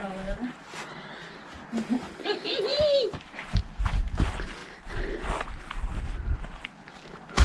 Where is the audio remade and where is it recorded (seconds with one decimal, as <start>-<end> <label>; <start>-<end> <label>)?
0.0-7.4 recorded